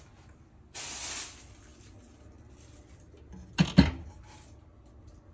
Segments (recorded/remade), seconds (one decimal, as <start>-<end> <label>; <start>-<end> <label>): 0.0-5.3 recorded